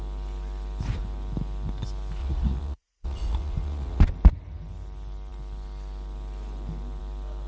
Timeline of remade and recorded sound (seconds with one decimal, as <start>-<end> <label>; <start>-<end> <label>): 0.0-2.2 recorded; 2.2-4.0 remade; 4.0-7.5 recorded